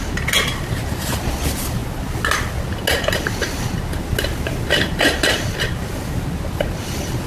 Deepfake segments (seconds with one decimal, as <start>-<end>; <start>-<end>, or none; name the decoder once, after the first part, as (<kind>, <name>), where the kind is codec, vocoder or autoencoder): none